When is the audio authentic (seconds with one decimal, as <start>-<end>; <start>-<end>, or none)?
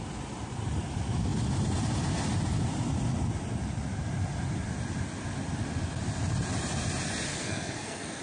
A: 0.0-7.3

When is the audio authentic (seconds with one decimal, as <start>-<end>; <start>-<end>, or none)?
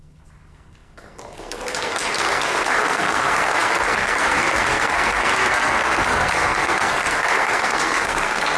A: none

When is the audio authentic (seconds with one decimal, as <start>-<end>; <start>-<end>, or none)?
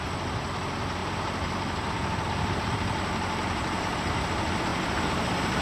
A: 0.0-1.0; 4.1-4.7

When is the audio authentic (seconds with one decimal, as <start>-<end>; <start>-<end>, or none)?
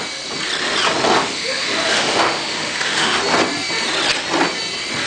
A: 0.0-1.1; 3.2-5.1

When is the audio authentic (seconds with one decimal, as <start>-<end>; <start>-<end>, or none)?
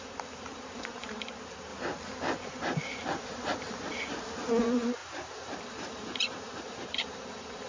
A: 1.7-4.6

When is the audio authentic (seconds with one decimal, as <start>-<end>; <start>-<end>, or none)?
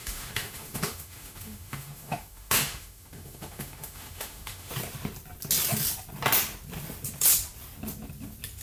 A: 4.7-8.6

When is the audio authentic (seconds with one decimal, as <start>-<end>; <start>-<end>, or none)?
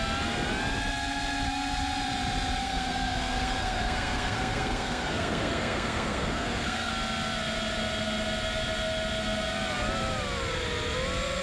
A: 0.0-2.6; 6.9-11.4